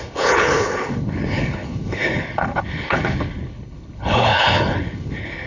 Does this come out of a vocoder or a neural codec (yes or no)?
yes